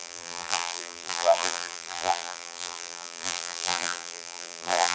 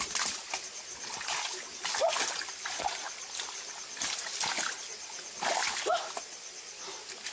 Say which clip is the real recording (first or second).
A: second